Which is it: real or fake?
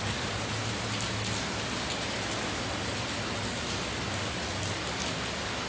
real